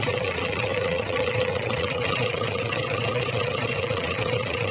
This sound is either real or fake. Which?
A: fake